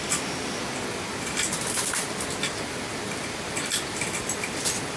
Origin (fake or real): real